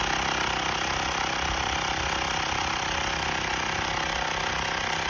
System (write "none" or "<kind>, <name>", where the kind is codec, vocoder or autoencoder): none